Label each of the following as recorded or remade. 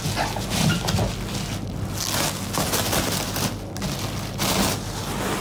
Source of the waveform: recorded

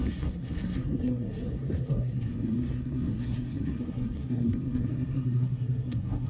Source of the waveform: remade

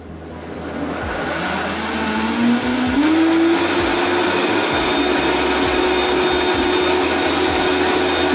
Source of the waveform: recorded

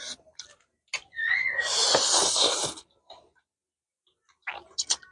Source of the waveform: recorded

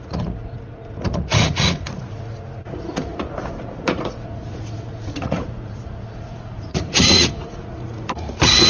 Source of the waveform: remade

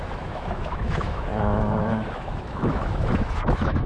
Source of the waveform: remade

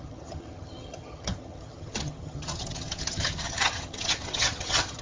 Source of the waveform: remade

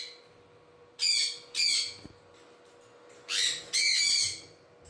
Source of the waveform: recorded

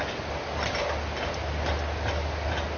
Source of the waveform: recorded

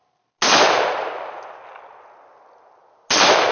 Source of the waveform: recorded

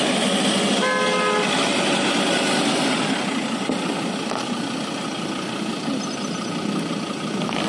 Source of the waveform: recorded